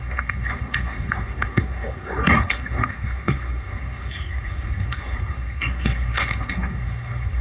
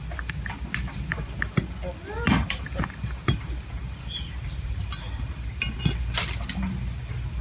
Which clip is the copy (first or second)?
first